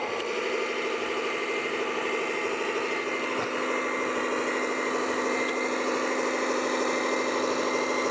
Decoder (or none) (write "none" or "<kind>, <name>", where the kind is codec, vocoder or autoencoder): none